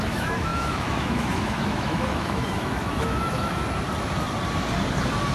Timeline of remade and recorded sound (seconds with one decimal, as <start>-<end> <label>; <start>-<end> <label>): 0.0-3.6 remade; 3.6-5.3 recorded